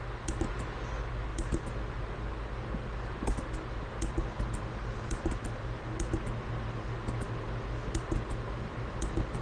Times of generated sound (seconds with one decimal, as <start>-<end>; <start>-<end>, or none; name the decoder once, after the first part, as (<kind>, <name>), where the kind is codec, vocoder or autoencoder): none